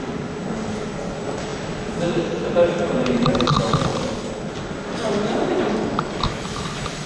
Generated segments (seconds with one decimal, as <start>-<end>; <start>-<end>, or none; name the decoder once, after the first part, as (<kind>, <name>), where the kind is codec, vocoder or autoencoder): none